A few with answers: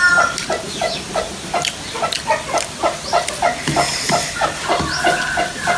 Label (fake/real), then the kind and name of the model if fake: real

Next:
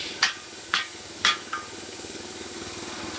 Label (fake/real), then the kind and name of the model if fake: fake, codec, DAC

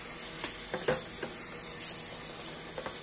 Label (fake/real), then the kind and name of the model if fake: real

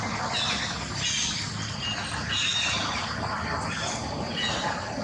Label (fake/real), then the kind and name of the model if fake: real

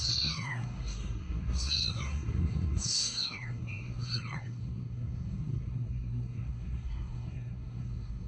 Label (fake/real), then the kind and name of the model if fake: fake, codec, SNAC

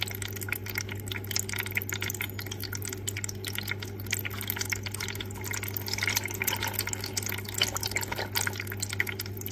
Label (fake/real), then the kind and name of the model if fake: real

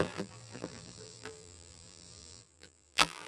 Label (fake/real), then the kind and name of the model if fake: fake, vocoder, BigVGAN v2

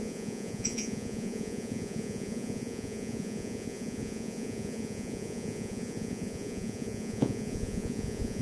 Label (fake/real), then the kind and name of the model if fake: fake, vocoder, Vocos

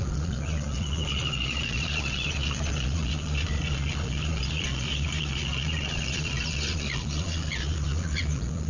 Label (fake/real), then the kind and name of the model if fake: fake, vocoder, Vocos